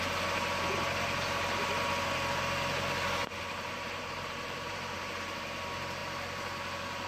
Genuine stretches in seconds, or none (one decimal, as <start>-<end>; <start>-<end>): 0.0-3.4; 5.1-7.1